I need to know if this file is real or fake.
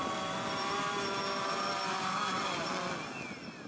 real